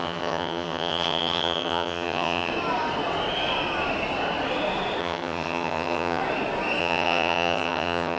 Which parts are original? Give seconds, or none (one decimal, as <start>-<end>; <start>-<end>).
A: 2.5-5.0; 6.2-6.8